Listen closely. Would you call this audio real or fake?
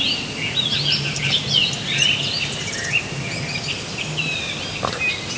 fake